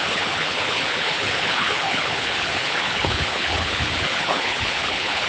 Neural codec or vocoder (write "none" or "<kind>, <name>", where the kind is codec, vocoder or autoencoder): codec, HILCodec